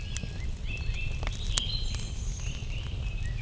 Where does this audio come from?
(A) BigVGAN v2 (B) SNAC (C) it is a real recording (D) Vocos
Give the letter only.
C